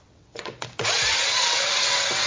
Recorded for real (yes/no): no